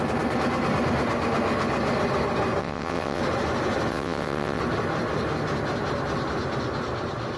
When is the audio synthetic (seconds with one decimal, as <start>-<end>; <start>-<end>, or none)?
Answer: 2.6-3.2; 3.9-4.6

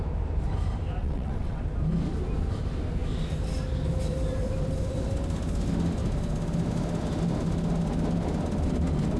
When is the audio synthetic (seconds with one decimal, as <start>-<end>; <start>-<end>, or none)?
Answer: 1.0-1.6